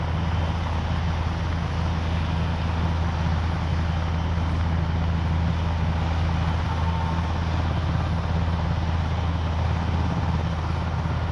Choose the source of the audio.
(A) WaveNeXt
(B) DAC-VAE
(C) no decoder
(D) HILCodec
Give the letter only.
C